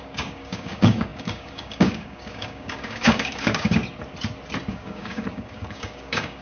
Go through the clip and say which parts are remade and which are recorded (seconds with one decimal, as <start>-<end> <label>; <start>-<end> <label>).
0.0-3.8 remade; 3.8-4.7 recorded; 4.7-6.4 remade